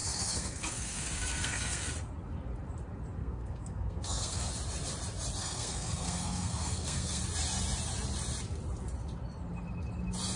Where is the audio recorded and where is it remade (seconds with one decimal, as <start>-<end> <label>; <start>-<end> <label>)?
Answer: 0.0-1.9 remade; 1.9-3.2 recorded; 3.2-4.5 remade; 4.5-5.4 recorded; 5.4-7.2 remade; 7.2-10.4 recorded